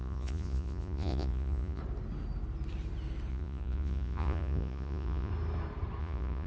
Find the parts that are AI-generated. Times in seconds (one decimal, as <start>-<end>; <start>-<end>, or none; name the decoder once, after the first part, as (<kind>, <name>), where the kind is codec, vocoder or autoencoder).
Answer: 0.0-1.8 (vocoder, Vocos); 3.3-5.3; 6.0-6.5